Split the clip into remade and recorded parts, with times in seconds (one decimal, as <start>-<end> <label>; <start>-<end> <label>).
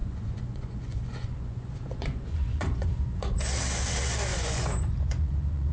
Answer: 0.0-3.4 remade; 3.4-4.3 recorded; 4.3-5.7 remade